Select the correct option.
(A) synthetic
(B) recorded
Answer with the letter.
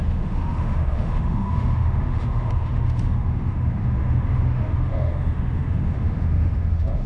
A